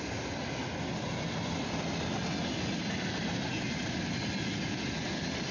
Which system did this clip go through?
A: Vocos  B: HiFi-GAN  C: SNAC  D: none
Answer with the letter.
D